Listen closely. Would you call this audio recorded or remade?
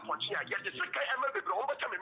recorded